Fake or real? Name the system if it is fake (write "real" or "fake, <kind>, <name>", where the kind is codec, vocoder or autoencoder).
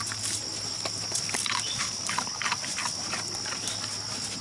real